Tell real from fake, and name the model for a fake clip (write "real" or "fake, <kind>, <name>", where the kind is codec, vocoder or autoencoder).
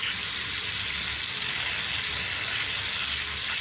real